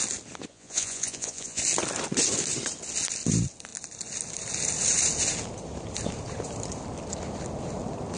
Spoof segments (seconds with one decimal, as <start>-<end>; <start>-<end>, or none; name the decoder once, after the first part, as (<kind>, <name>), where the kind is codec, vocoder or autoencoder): 0.5-1.6 (vocoder, Vocos)